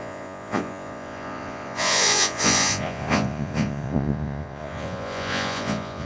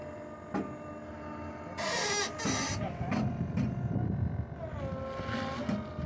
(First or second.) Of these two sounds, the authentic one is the second